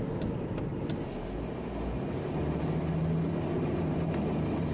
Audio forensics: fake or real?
real